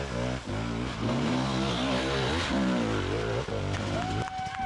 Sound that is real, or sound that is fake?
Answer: real